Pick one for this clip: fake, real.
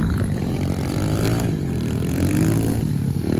real